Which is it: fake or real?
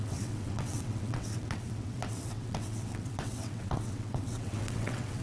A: fake